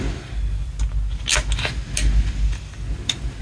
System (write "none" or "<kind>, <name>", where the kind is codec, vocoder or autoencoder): none